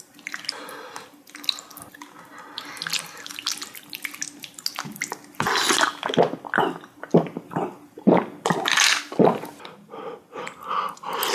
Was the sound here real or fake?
real